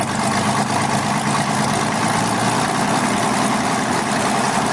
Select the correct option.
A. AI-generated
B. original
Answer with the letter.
B